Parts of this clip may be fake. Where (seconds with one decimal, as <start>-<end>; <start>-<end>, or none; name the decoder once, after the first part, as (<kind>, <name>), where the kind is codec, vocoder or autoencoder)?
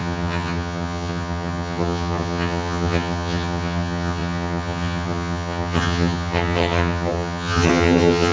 0.0-8.3 (vocoder, HiFi-GAN)